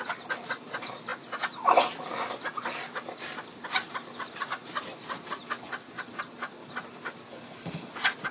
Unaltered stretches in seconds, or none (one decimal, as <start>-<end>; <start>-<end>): 0.0-7.3; 7.9-8.3